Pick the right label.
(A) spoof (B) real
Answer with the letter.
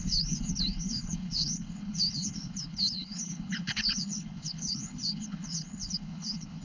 A